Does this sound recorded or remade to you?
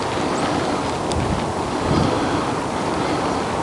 recorded